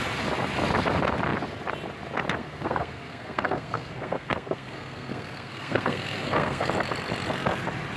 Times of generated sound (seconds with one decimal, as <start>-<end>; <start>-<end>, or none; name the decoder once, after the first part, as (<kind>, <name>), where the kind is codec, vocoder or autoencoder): 2.4-6.7 (codec, SNAC)